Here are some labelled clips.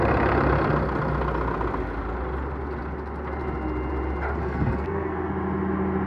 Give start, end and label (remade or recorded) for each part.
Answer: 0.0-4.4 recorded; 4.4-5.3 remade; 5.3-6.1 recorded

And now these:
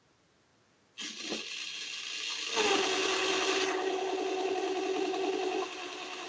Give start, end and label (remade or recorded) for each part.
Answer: 0.0-6.3 recorded

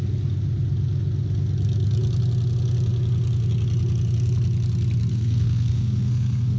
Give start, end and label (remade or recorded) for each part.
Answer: 0.0-5.1 recorded; 5.1-6.6 remade

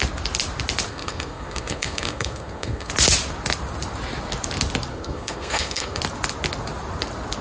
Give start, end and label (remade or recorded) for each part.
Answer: 0.0-0.9 recorded; 0.9-2.9 remade; 2.9-4.9 recorded; 4.9-6.0 remade; 6.0-7.4 recorded

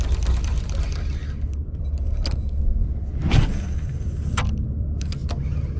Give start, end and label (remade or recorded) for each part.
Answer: 0.0-5.8 recorded

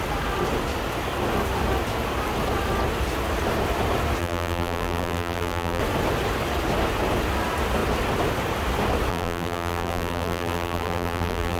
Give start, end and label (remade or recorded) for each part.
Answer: 0.0-4.2 recorded; 4.2-5.8 remade; 5.8-9.1 recorded; 9.1-11.6 remade